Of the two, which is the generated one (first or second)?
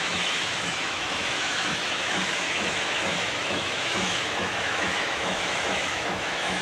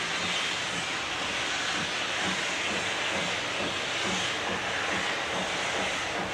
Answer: first